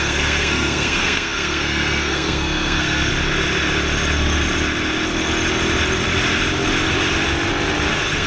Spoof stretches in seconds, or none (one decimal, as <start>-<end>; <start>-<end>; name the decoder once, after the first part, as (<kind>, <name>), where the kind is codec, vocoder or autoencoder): 0.0-3.1 (codec, SNAC); 7.9-8.3